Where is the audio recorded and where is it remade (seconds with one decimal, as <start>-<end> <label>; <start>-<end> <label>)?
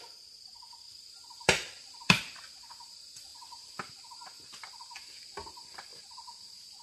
0.0-0.5 remade; 0.5-1.3 recorded; 1.3-6.8 remade